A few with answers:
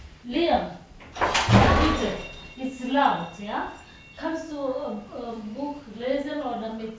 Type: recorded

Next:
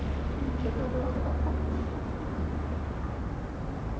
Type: recorded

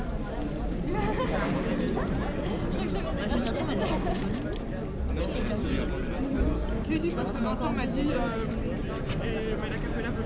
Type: recorded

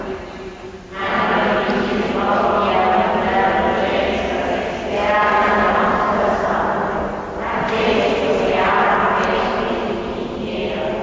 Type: recorded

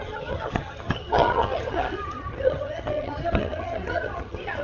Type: remade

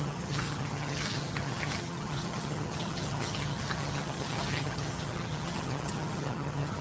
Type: remade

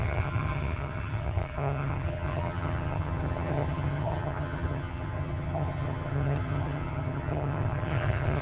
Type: remade